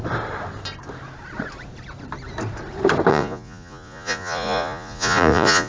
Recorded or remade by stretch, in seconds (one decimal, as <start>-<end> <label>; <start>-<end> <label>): 0.0-3.1 recorded; 3.1-5.7 remade